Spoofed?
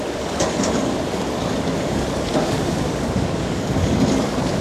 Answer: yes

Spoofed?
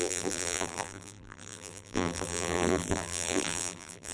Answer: yes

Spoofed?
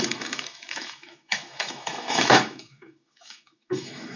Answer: yes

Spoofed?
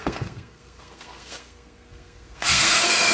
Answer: yes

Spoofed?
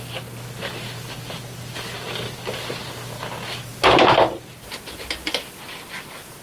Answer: no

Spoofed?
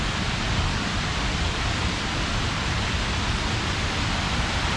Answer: no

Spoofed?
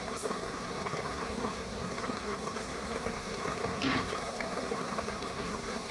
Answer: yes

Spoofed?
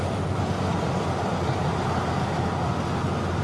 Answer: no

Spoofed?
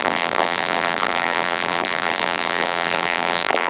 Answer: yes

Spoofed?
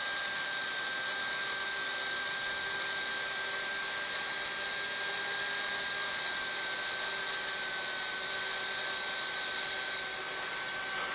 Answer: no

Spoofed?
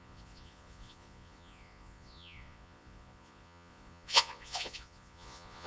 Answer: yes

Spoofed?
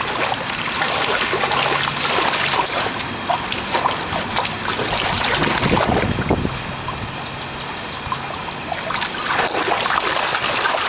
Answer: no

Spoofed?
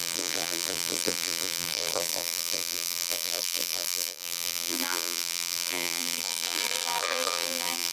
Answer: yes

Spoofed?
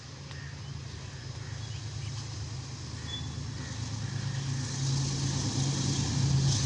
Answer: no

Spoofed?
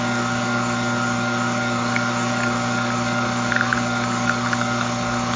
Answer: yes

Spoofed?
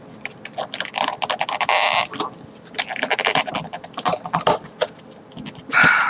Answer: no